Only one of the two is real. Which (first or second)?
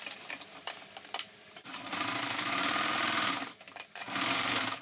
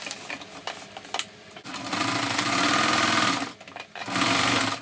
second